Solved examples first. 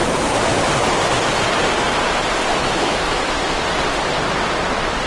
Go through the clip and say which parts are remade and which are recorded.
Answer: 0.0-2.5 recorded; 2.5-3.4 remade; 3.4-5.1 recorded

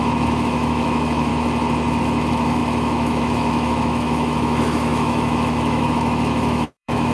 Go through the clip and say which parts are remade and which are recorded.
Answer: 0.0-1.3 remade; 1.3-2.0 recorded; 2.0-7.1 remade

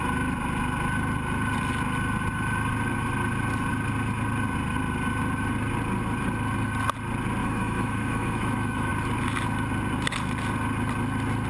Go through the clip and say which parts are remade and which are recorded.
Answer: 0.0-7.4 recorded; 7.4-8.9 remade; 8.9-11.5 recorded

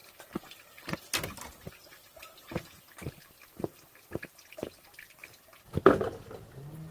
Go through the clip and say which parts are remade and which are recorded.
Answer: 0.0-6.9 recorded